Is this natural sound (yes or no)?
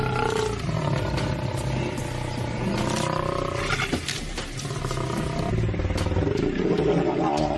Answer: yes